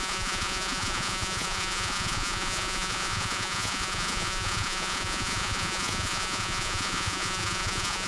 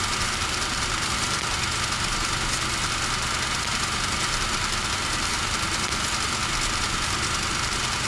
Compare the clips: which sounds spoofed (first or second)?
first